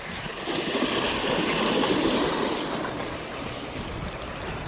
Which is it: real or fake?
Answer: real